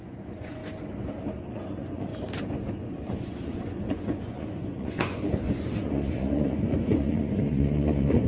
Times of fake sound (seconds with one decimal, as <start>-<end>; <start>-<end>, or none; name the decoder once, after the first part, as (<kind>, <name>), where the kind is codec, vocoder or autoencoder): 0.0-0.6 (vocoder, Vocos); 1.3-2.1; 2.7-8.3